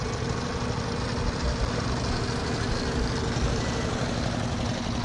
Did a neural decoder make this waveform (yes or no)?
no